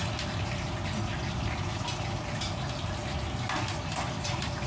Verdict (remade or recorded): recorded